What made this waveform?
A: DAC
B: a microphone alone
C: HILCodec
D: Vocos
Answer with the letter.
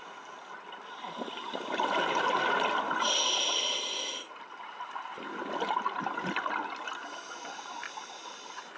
B